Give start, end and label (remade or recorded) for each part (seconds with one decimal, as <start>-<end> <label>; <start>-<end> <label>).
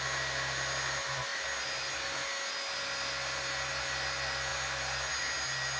0.0-5.8 recorded